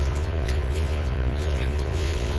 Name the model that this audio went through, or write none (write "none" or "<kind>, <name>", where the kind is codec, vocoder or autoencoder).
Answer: vocoder, Vocos